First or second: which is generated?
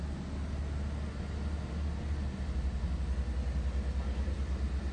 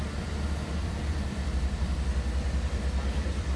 second